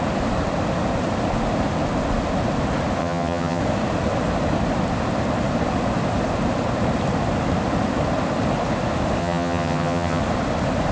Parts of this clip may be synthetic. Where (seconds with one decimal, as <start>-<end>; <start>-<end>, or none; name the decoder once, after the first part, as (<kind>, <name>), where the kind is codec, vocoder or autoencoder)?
3.0-3.6 (vocoder, HiFi-GAN); 9.2-10.2